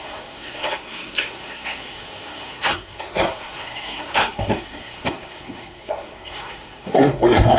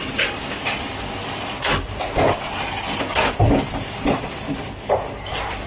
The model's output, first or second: first